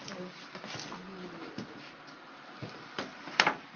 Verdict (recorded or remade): recorded